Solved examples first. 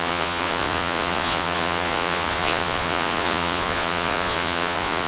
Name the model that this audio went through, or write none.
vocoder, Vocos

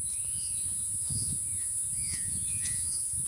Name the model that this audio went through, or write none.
vocoder, Vocos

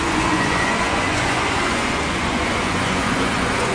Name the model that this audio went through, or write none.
vocoder, Vocos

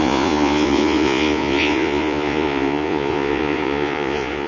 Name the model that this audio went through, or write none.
vocoder, Vocos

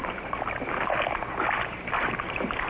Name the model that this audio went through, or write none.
none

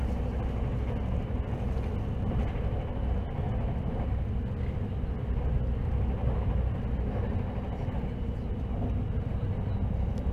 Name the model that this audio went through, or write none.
none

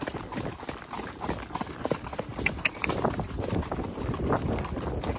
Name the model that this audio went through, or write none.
none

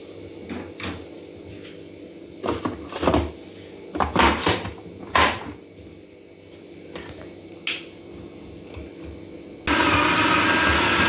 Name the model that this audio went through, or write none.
none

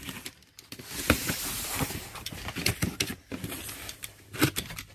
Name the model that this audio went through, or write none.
none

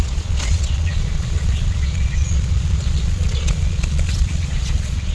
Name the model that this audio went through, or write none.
vocoder, Vocos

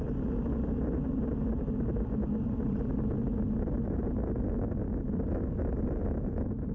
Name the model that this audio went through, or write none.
none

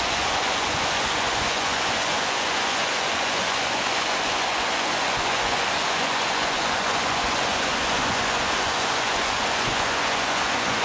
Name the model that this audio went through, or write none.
vocoder, Vocos